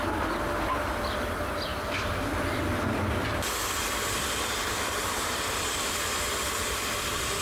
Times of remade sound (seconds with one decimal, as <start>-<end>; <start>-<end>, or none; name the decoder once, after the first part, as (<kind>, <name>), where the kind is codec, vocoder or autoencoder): none